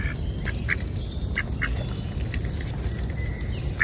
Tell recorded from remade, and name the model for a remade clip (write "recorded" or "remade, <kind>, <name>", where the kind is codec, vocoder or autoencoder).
recorded